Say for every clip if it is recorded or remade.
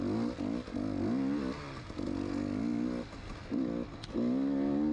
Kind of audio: recorded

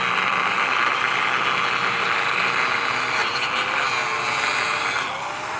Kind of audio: recorded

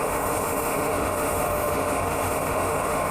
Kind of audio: remade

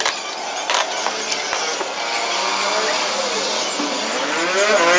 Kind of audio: recorded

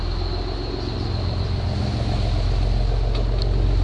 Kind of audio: recorded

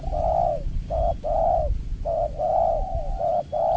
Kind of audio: recorded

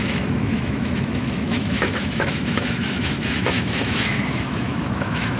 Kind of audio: remade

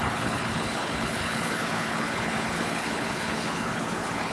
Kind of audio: remade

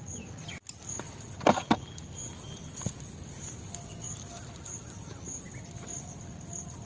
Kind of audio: recorded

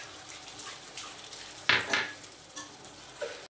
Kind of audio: recorded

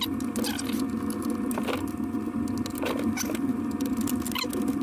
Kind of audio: recorded